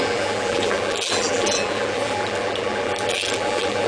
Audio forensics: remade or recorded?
remade